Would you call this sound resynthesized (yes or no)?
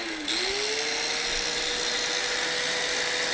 no